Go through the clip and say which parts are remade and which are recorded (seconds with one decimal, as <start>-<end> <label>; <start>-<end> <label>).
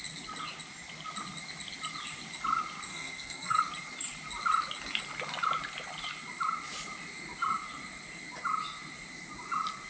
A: 0.0-2.9 recorded; 2.9-3.6 remade; 3.6-9.9 recorded